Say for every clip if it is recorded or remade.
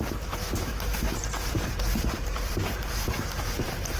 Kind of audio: remade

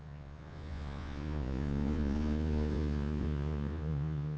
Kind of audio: remade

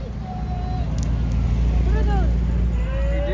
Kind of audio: recorded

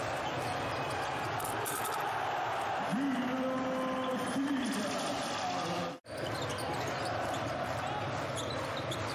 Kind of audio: recorded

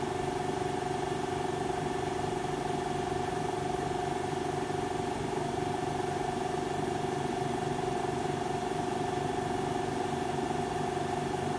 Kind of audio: remade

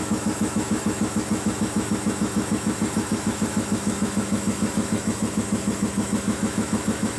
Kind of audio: remade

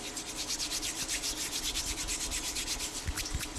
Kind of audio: recorded